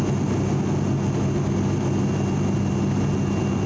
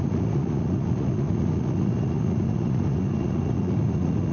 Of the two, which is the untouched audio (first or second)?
first